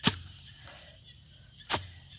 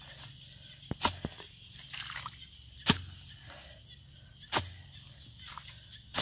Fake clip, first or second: first